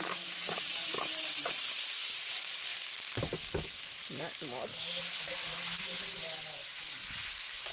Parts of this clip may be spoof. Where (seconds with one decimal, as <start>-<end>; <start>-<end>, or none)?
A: none